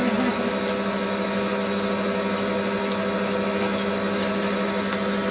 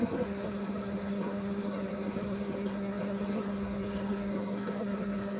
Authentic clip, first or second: first